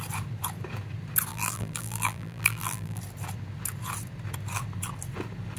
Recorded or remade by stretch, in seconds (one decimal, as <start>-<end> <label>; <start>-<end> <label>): 0.0-1.3 recorded; 1.3-3.0 remade; 3.0-5.6 recorded